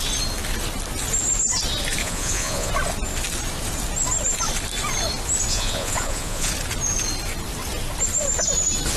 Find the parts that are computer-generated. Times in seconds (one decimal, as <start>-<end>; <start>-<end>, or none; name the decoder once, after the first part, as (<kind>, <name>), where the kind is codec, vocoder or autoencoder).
2.0-2.7 (vocoder, Vocos); 5.5-6.5